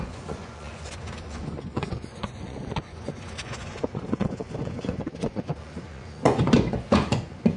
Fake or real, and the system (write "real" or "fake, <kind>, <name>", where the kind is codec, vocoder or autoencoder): fake, vocoder, Vocos